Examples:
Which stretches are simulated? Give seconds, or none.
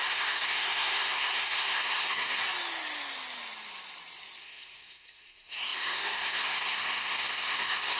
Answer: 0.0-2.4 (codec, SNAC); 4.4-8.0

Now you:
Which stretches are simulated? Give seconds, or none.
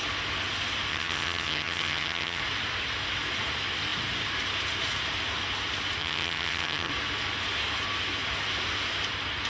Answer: 0.9-2.4 (vocoder, HiFi-GAN); 6.0-6.9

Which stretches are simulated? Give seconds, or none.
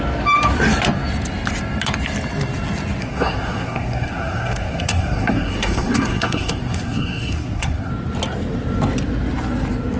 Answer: 3.0-7.9 (codec, SNAC)